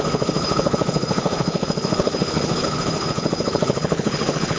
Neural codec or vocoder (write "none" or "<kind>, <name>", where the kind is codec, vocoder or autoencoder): codec, HILCodec